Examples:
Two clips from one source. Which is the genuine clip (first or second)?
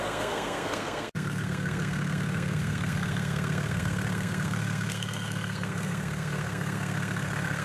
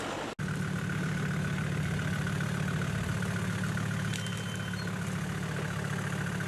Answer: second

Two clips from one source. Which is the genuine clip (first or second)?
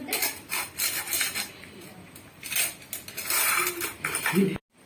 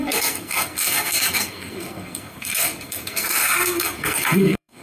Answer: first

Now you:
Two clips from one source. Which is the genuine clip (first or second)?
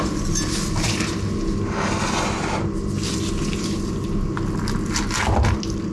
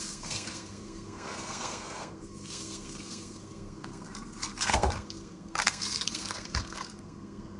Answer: first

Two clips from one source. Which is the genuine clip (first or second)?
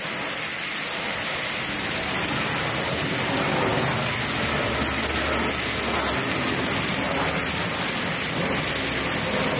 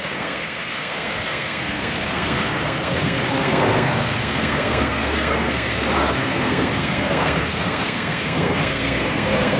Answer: first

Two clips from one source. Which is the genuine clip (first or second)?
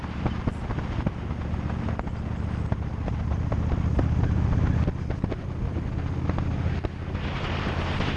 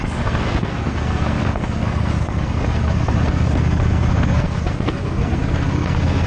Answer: first